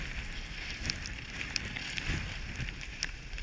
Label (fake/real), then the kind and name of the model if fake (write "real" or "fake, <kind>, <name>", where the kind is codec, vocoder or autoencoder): real